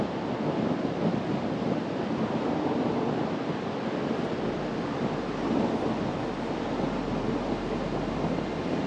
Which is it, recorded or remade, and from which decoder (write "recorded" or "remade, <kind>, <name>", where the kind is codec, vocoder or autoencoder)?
recorded